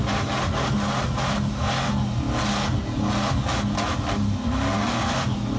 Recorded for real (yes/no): yes